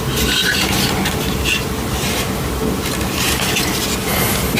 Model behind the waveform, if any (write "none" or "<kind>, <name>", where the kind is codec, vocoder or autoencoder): none